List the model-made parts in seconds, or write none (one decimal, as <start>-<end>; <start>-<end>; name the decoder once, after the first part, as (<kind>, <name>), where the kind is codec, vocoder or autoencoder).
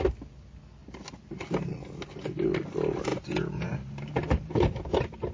3.1-3.7 (vocoder, Vocos)